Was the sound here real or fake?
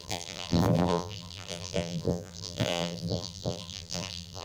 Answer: fake